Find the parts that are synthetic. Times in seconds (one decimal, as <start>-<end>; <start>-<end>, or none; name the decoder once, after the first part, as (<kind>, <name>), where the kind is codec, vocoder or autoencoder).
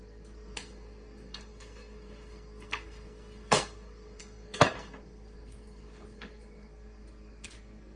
0.0-8.0 (codec, SNAC)